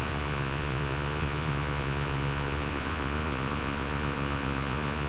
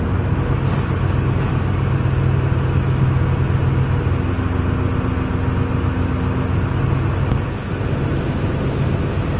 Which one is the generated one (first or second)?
first